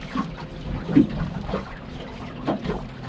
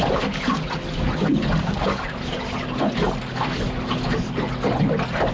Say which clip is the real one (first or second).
second